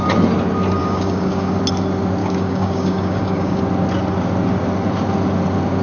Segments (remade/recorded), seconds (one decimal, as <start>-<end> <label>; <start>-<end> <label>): 0.0-0.8 recorded; 0.8-1.6 remade; 1.6-2.2 recorded; 2.2-3.6 remade; 3.6-5.8 recorded